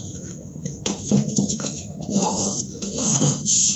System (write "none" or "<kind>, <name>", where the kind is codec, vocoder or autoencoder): autoencoder, DAC-VAE